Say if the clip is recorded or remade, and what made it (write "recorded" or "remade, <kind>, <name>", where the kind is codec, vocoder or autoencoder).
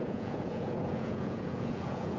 remade, vocoder, Vocos